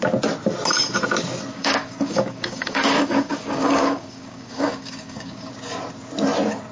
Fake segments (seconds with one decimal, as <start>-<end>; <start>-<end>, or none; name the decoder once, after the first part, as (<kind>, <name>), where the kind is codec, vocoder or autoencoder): 1.5-5.5 (codec, DAC)